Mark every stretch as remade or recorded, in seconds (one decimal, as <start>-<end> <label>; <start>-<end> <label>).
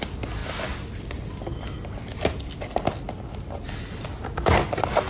0.0-5.1 recorded